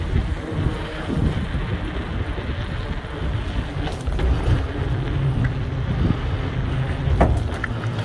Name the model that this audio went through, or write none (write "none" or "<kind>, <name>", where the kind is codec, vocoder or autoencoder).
none